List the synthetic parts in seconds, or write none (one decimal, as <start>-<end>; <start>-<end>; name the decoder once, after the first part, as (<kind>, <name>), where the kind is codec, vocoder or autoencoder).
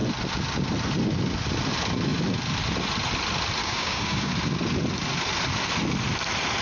3.6-4.3 (codec, DAC)